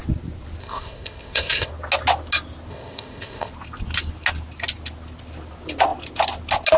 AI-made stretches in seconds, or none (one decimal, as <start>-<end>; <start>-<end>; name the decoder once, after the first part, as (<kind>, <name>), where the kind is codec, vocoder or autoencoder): 0.6-1.7 (codec, ZipCodec); 2.7-3.5